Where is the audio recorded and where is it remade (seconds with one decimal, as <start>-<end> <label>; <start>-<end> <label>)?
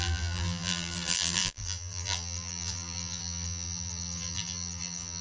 0.0-5.2 remade